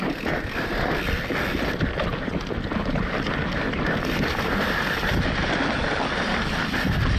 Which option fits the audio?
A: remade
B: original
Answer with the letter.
B